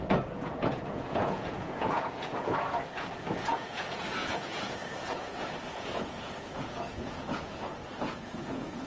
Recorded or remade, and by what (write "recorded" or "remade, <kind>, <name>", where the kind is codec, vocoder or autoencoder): remade, vocoder, Vocos